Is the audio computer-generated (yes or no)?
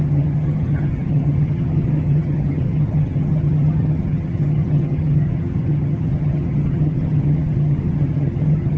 yes